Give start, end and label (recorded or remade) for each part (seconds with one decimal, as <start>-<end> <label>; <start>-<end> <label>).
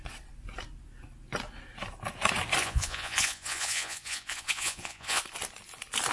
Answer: 0.0-2.6 recorded; 2.6-5.2 remade; 5.2-6.1 recorded